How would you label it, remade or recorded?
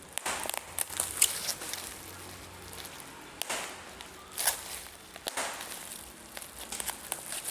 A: recorded